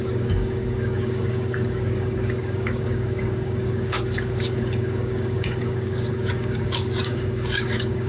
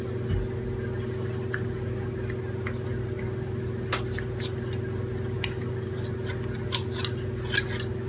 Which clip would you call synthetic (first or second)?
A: first